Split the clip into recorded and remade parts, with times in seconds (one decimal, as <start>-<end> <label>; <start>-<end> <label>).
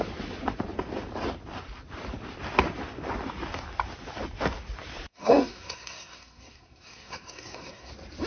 0.0-5.1 recorded; 5.1-7.9 remade; 7.9-8.3 recorded